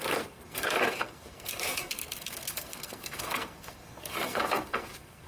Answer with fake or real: fake